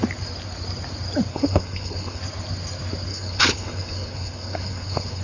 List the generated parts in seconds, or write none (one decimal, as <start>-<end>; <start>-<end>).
1.3-2.2; 3.1-5.2